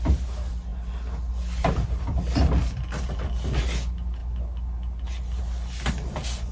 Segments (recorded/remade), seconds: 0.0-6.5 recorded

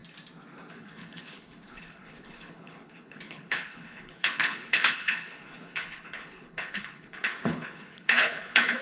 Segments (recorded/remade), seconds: 0.0-0.7 recorded; 0.7-8.8 remade

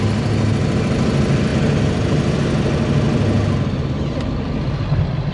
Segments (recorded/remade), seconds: 0.0-5.3 recorded

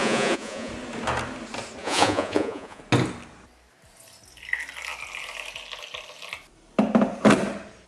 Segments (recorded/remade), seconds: 0.0-0.7 remade; 0.7-1.8 recorded; 1.8-2.8 remade; 2.8-7.9 recorded

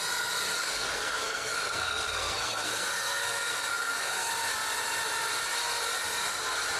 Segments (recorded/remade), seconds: 0.0-0.6 recorded; 0.6-4.3 remade; 4.3-6.8 recorded

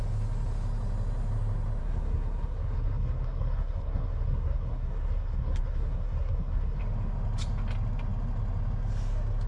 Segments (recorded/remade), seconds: 0.0-1.8 recorded; 1.8-6.8 remade; 6.8-9.5 recorded